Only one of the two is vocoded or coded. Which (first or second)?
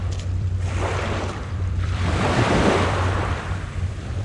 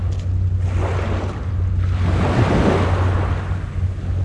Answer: first